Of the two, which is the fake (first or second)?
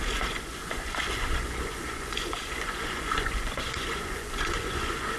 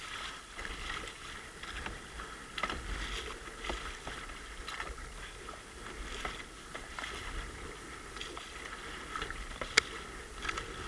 first